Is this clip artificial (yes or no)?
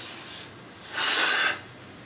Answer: no